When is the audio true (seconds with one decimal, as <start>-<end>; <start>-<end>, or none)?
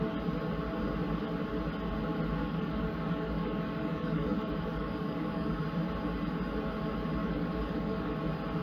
0.0-2.4; 5.6-7.2; 8.2-8.6